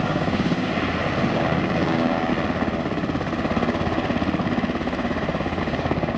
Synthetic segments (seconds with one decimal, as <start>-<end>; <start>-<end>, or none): 0.0-0.7; 1.3-2.3; 5.6-6.2